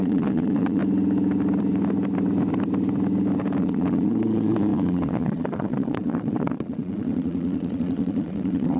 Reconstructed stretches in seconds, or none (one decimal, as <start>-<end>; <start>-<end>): 0.0-0.8; 3.6-8.8